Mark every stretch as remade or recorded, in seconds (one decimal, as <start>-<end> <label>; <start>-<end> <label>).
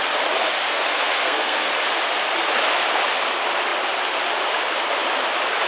0.0-0.7 recorded; 0.7-1.7 remade; 1.7-5.7 recorded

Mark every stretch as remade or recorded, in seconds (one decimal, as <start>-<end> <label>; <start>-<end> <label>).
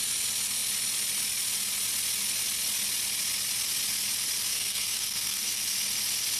0.0-4.5 recorded; 4.5-5.6 remade; 5.6-6.4 recorded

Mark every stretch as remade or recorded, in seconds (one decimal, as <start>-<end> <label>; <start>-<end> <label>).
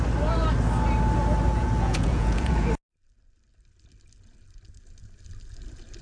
0.0-1.5 recorded; 1.5-2.7 remade; 2.7-6.0 recorded